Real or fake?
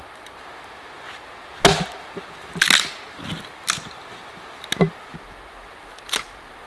real